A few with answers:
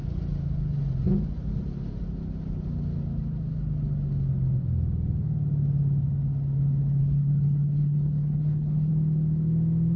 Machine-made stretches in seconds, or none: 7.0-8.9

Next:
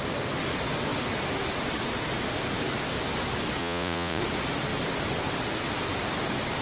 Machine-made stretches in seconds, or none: 3.6-4.2

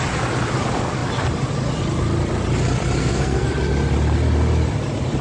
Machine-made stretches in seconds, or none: 3.0-3.5

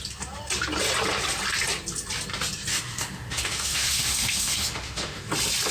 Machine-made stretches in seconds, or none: 2.7-5.3